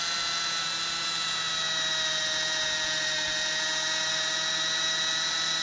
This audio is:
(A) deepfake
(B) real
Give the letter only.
B